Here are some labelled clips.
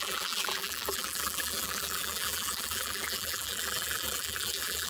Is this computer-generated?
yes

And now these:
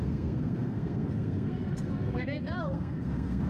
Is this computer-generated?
yes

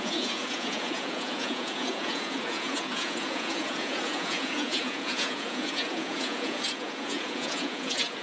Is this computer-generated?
yes